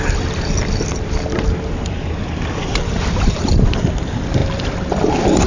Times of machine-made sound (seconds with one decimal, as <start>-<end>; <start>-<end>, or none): none